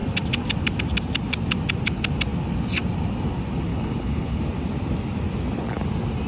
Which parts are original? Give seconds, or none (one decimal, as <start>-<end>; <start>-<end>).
0.0-3.7; 4.4-6.3